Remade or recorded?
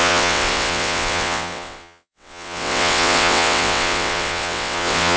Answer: remade